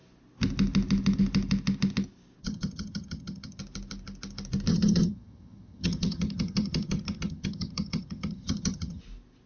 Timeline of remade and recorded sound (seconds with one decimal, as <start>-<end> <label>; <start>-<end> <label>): 0.0-2.4 recorded; 2.4-3.6 remade; 3.6-4.7 recorded; 4.7-9.0 remade; 9.0-9.5 recorded